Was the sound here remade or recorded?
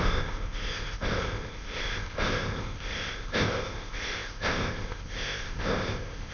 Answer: remade